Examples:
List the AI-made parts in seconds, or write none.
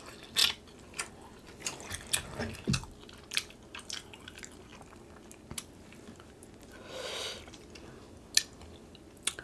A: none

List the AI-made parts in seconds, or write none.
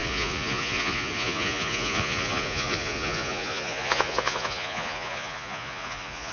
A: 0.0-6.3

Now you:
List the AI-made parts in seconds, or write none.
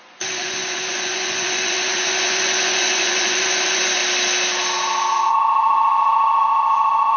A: 0.0-4.0; 5.3-7.2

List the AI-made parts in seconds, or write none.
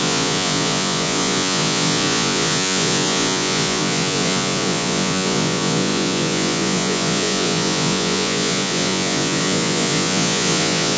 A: 0.0-11.0